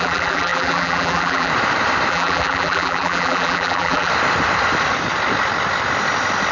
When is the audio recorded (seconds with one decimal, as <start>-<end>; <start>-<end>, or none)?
1.5-2.1; 4.1-6.5